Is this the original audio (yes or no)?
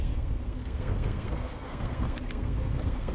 no